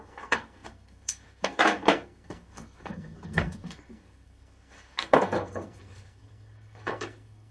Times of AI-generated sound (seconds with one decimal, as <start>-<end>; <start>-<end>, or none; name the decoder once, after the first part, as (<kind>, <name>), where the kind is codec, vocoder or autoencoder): 0.0-7.5 (codec, SNAC)